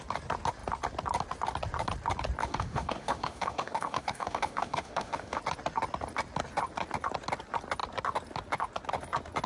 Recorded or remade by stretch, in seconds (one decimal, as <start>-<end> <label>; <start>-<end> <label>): 0.0-2.4 recorded; 2.4-5.4 remade; 5.4-9.5 recorded

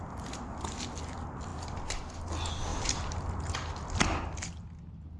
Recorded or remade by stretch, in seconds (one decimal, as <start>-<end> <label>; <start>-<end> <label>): 0.0-5.2 recorded